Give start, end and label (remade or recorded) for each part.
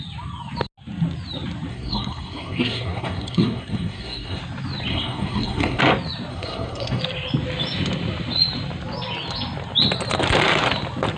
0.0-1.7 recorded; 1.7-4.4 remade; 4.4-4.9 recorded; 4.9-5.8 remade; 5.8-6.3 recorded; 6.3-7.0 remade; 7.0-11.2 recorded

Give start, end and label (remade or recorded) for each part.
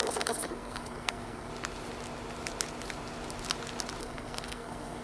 0.0-1.5 remade; 1.5-4.0 recorded; 4.0-5.0 remade